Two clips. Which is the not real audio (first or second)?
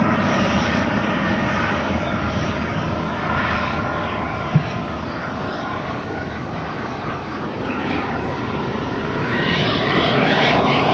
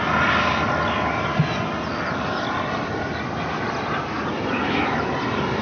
first